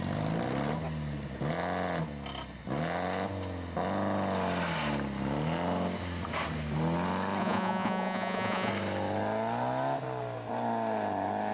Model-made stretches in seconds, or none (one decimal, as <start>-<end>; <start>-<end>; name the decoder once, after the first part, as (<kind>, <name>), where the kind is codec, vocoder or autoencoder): 7.4-8.7 (vocoder, Vocos)